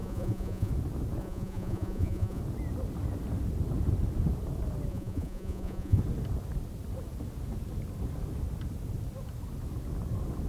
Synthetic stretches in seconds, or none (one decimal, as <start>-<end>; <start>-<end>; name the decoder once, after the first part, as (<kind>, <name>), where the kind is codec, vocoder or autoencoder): 0.0-0.7 (vocoder, Vocos); 1.2-2.4; 4.9-6.0